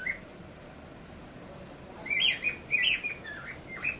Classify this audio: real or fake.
real